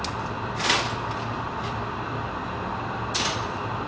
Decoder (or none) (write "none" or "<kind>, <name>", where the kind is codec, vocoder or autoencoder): none